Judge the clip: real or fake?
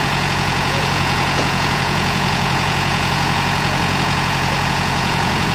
fake